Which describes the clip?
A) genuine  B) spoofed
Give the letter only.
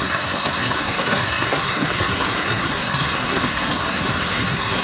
B